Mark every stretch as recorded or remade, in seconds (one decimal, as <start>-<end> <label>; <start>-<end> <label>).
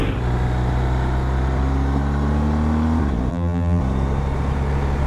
0.0-3.3 recorded; 3.3-3.8 remade; 3.8-5.1 recorded